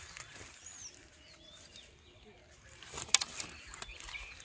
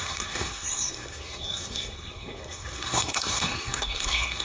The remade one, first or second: second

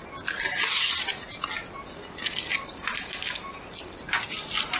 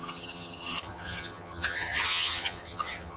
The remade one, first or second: second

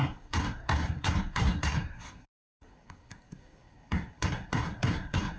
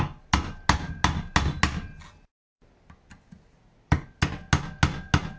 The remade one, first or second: first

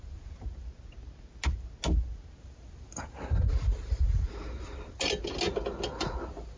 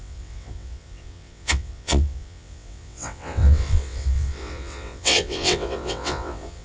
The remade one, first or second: second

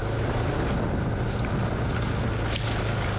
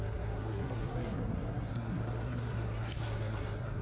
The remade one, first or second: second